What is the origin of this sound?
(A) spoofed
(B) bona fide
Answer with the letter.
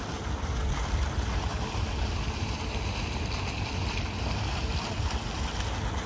B